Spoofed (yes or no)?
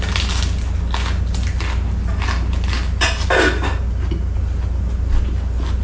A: no